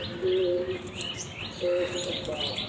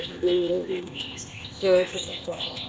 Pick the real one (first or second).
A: first